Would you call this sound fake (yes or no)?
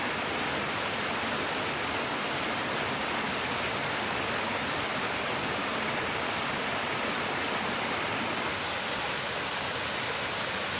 no